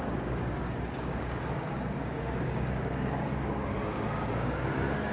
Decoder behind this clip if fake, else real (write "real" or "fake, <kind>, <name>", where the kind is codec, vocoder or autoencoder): fake, codec, DAC